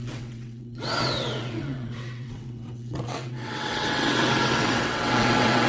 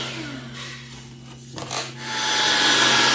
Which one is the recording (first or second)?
second